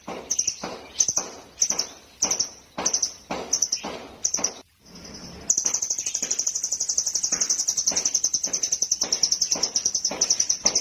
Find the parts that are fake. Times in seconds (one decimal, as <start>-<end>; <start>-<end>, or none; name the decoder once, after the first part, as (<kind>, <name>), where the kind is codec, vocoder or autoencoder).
none